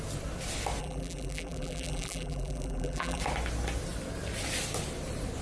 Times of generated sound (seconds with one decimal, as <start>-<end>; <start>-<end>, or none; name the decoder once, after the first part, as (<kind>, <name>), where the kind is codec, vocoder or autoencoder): 0.8-3.2 (vocoder, BigVGAN v2)